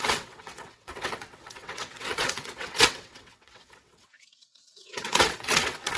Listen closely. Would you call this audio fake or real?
fake